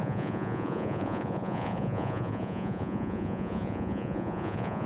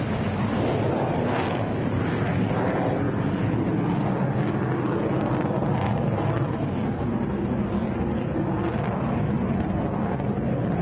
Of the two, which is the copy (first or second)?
first